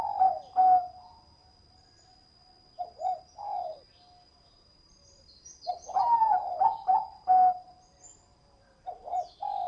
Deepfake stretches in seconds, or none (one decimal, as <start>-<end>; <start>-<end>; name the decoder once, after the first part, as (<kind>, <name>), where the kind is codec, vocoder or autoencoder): 4.3-7.8 (vocoder, BigVGAN v2); 8.3-9.2

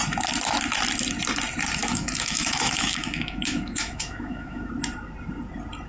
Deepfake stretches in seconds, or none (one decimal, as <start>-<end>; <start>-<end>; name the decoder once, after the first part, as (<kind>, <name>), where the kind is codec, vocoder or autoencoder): 1.8-4.7 (autoencoder, DAC-VAE)

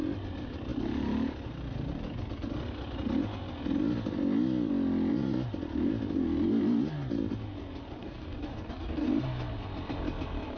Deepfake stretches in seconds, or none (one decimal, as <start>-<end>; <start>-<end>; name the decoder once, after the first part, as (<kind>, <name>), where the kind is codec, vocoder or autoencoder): 8.0-9.1 (codec, DAC)

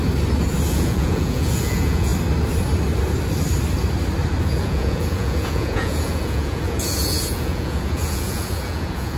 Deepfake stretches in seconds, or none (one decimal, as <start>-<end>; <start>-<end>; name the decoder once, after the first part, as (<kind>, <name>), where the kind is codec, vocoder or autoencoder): 0.7-2.1 (vocoder, Vocos); 4.4-9.2

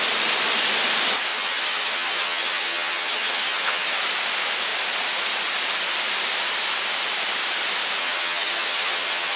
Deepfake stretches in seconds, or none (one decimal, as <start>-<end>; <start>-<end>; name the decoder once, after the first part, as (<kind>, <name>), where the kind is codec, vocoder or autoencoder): 1.3-4.0 (vocoder, HiFi-GAN); 8.0-9.4

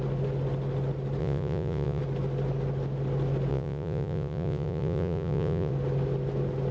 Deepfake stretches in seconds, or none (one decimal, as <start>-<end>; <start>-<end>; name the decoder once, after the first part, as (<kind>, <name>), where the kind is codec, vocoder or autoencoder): 1.2-2.0 (vocoder, Vocos); 3.5-5.7

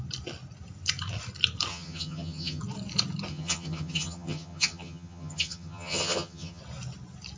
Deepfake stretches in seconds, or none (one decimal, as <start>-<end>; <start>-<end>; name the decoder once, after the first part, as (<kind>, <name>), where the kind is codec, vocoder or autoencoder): 1.7-2.6 (vocoder, HiFi-GAN); 3.3-6.6